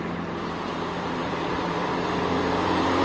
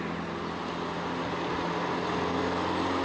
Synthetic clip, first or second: first